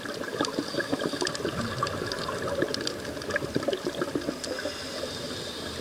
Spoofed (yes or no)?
no